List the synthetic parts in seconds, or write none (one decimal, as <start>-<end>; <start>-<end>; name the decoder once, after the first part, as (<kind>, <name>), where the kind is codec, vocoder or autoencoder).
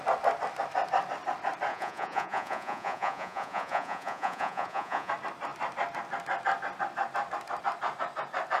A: 1.7-5.1 (vocoder, Vocos)